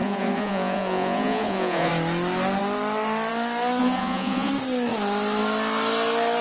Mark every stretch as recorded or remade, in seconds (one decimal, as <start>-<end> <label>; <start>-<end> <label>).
0.0-1.9 remade; 1.9-3.8 recorded; 3.8-4.5 remade; 4.5-6.4 recorded